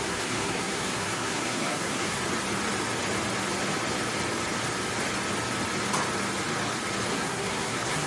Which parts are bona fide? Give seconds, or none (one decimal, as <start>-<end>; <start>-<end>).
2.2-7.1